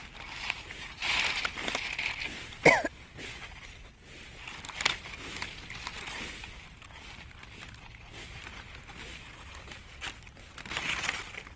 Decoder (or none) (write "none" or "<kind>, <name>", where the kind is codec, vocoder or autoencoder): none